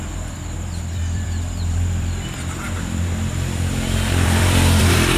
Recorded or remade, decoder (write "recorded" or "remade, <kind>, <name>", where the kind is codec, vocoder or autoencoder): remade, vocoder, BigVGAN v2